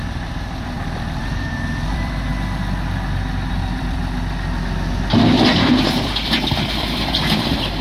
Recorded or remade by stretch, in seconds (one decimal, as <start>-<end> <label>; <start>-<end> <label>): 0.0-2.3 remade; 2.3-3.5 recorded; 3.5-4.0 remade; 4.0-5.8 recorded; 5.8-7.8 remade